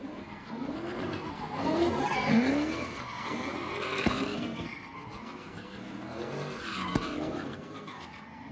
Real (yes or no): no